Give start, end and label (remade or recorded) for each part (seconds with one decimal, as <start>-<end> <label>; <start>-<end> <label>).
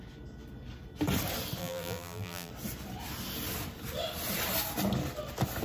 0.0-1.6 recorded; 1.6-2.5 remade; 2.5-5.6 recorded